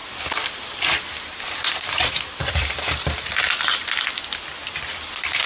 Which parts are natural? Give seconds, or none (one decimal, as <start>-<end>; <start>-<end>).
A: 3.3-5.5

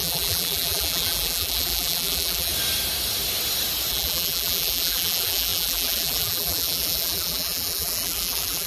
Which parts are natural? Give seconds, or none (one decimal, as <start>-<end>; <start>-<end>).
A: 2.5-3.9

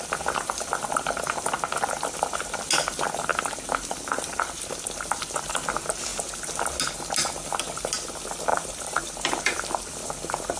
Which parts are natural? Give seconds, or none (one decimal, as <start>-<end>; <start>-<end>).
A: 0.0-8.5; 10.1-10.6

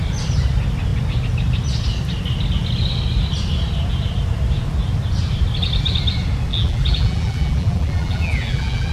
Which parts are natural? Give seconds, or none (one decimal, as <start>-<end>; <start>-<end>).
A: 0.0-6.5

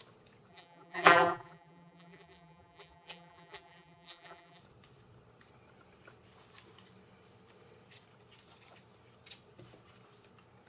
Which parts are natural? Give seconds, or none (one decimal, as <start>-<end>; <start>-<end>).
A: 0.0-0.5; 4.6-10.7

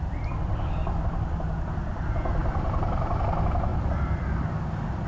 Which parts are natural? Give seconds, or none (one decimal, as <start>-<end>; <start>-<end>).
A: 0.0-2.4; 3.2-3.7; 4.5-5.1

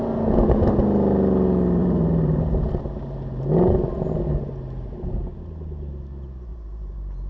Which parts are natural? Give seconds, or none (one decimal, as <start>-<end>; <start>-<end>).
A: 0.0-1.8; 2.5-6.5